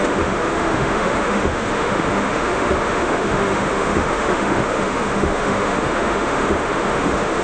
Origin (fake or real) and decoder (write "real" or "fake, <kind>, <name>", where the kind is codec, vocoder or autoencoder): fake, autoencoder, DAC-VAE